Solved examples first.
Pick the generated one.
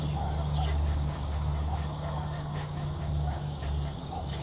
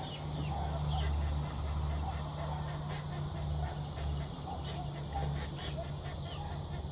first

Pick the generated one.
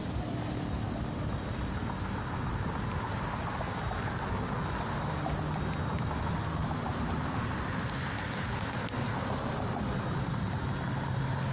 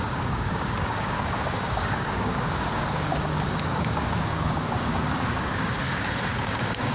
second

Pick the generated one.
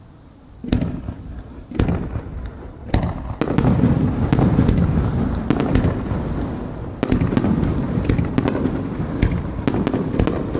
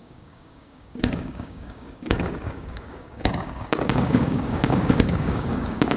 second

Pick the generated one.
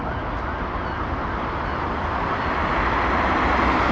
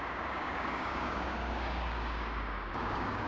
second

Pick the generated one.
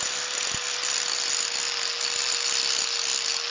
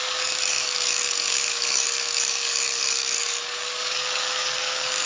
second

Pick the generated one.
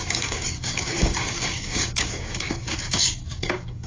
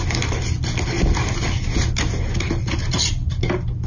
first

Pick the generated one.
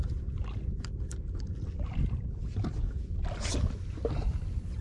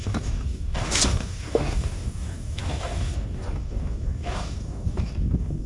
second